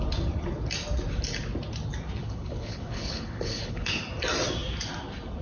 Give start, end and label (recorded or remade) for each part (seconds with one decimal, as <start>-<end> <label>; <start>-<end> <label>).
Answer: 0.0-2.2 recorded; 2.2-4.0 remade; 4.0-5.4 recorded